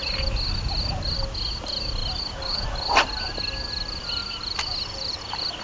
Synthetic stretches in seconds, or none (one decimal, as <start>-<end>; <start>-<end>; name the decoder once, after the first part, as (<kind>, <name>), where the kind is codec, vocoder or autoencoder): none